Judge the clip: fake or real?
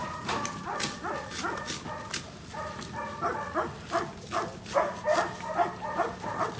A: real